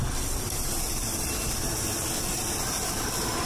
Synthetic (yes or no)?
no